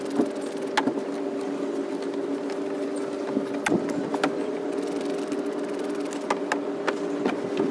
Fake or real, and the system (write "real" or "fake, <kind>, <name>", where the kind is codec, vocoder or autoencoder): real